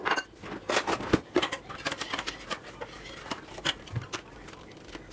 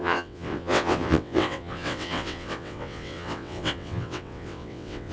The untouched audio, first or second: first